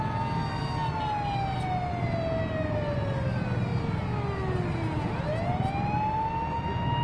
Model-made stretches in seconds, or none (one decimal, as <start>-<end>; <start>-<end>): none